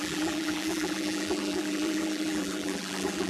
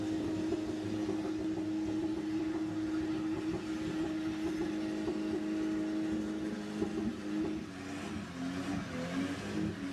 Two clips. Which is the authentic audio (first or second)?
second